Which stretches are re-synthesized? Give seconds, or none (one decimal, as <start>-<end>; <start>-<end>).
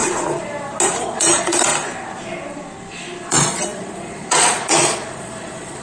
1.0-1.7; 3.3-5.8